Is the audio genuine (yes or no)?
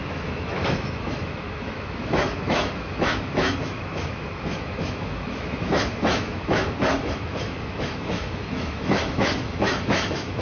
no